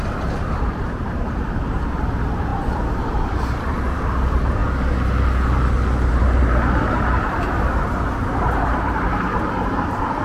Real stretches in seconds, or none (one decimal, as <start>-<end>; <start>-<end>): 4.6-6.1

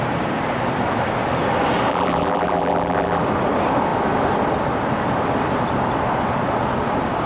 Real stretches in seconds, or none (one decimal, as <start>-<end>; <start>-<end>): 0.0-1.9; 3.2-7.3